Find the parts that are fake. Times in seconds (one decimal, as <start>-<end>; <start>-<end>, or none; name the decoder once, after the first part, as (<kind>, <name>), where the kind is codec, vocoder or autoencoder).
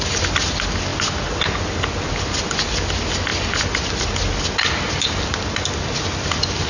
none